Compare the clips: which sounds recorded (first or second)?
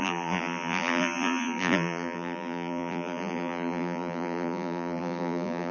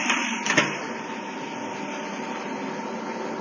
second